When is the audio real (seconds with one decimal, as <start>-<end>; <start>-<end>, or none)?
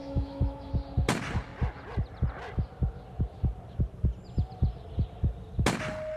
0.7-6.2